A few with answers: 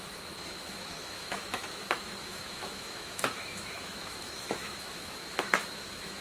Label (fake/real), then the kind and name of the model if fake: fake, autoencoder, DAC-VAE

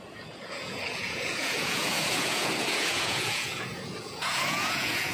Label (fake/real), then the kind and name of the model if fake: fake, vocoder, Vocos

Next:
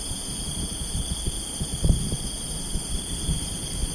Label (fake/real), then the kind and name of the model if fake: real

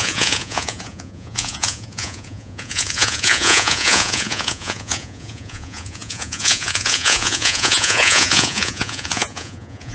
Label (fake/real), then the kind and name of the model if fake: fake, vocoder, Vocos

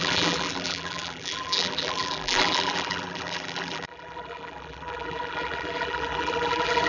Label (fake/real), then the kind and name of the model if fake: fake, vocoder, BigVGAN v2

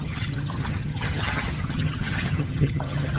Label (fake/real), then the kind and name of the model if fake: fake, vocoder, HiFi-GAN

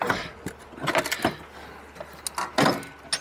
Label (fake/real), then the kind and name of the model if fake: real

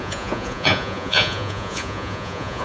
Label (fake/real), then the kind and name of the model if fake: fake, vocoder, Vocos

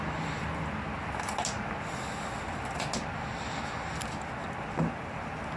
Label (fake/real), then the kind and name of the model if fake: real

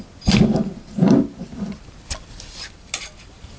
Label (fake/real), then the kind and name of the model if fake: real